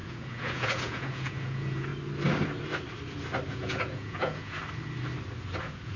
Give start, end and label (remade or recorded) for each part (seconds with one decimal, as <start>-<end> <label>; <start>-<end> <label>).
0.0-1.9 remade; 1.9-3.5 recorded; 3.5-4.6 remade; 4.6-5.6 recorded; 5.6-6.0 remade